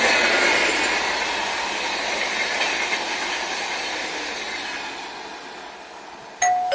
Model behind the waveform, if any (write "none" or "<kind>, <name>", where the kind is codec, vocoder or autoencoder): none